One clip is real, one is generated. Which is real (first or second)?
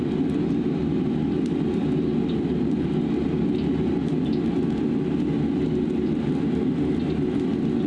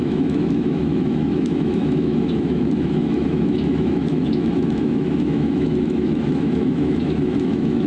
first